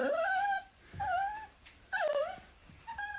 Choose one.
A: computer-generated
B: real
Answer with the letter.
A